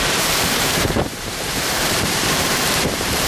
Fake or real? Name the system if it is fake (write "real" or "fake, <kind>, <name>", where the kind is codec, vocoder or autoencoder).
fake, vocoder, BigVGAN v2